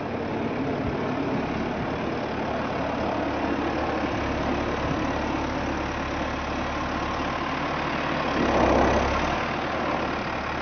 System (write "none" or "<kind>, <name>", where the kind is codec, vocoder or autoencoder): none